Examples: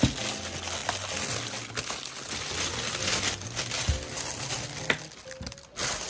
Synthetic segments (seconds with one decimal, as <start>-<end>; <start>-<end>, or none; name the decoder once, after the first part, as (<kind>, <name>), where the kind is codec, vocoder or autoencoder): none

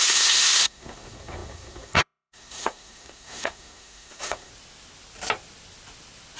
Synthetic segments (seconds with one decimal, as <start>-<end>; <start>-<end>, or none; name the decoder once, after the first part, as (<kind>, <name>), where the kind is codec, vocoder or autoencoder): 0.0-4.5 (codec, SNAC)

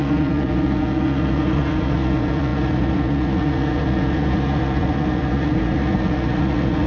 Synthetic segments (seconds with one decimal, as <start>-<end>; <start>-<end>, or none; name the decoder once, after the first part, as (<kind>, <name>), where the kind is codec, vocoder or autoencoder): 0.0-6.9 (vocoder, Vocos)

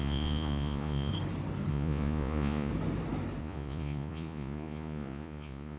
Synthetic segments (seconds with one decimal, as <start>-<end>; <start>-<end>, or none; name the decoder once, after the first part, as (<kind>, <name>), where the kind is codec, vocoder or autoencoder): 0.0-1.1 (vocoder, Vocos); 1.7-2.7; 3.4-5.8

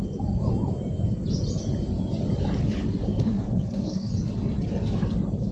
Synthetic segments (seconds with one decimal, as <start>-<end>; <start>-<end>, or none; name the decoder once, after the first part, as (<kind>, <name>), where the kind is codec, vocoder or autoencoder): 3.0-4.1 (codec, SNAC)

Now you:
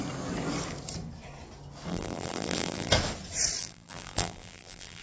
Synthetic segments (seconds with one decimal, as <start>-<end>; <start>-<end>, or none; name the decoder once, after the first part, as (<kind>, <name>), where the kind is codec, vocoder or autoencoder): 1.9-2.9 (vocoder, BigVGAN v2); 3.6-5.0

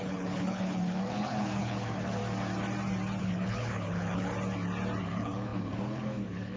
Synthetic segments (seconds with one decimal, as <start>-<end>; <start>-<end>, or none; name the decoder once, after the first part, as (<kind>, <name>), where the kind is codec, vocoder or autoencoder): 0.0-2.2 (codec, HILCodec); 3.2-4.3; 5.0-6.6